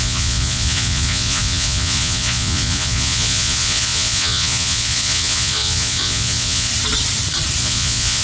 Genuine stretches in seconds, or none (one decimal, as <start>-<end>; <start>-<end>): 6.7-7.6